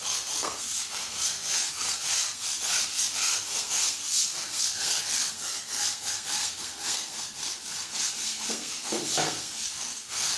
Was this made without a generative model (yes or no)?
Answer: no